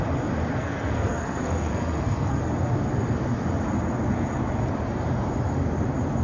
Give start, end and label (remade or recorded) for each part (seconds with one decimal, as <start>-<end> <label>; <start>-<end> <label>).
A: 0.0-0.5 recorded; 0.5-2.4 remade; 2.4-6.2 recorded